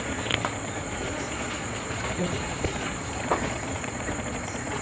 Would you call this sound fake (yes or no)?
yes